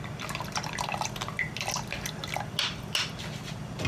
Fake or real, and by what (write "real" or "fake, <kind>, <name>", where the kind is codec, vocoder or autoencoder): real